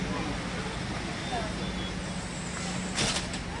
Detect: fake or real real